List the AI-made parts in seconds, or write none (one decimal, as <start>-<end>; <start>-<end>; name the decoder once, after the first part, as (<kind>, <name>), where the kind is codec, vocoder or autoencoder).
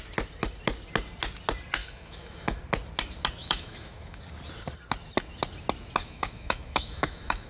1.8-2.6 (autoencoder, DAC-VAE); 3.4-4.2; 6.0-7.5